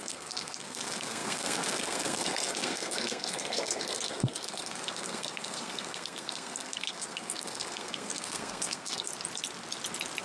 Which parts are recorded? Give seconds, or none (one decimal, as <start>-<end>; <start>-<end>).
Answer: 9.1-10.2